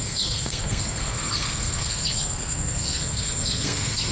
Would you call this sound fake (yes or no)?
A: yes